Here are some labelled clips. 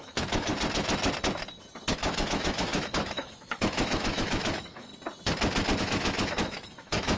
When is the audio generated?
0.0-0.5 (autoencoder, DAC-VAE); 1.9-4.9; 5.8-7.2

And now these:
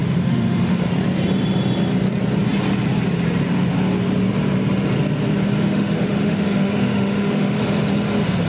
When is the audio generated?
0.0-0.9 (autoencoder, DAC-VAE); 5.6-7.6

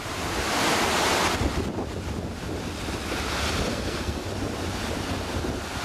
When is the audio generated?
3.7-4.3 (codec, SNAC)